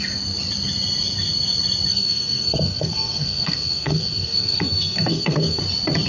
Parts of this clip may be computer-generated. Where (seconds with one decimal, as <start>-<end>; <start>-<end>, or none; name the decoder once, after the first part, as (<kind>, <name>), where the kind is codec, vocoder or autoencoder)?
1.9-5.6 (codec, SNAC)